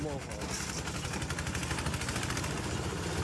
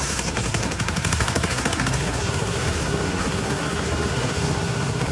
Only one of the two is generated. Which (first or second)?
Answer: second